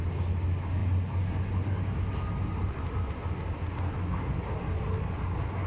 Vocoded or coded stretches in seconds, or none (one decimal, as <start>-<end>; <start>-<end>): none